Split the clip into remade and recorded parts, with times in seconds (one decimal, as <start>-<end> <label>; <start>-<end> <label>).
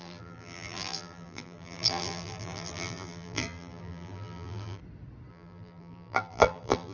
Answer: 0.0-4.8 remade; 4.8-5.3 recorded; 5.3-6.9 remade